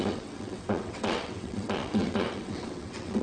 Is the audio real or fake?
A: fake